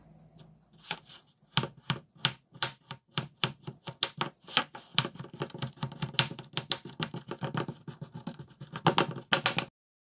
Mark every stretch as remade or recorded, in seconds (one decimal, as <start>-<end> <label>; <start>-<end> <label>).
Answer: 0.0-10.0 recorded